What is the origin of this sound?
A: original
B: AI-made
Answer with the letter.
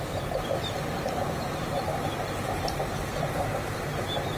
B